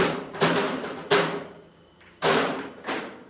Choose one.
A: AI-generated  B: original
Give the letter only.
A